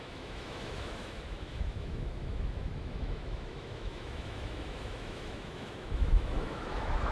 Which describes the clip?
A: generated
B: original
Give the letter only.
A